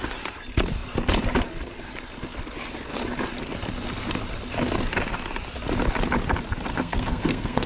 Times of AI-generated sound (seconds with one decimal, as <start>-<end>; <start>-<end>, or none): 6.7-7.7